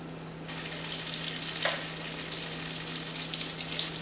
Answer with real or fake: real